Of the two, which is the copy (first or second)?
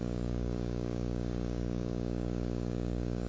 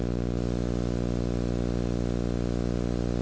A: first